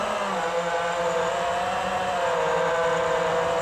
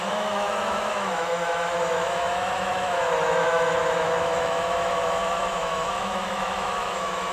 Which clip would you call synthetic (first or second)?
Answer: second